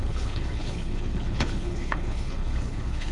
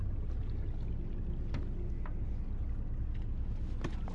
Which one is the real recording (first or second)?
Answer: second